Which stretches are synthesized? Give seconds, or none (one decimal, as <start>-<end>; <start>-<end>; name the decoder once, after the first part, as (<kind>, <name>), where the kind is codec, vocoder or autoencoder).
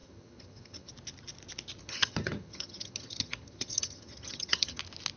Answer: 0.0-0.9 (vocoder, HiFi-GAN); 1.8-4.8